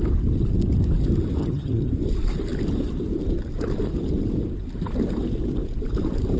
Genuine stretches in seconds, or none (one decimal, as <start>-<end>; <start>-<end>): 0.0-1.4; 1.9-6.4